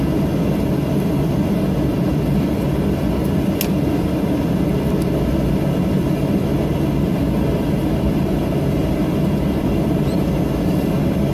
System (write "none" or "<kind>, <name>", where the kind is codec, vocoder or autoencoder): none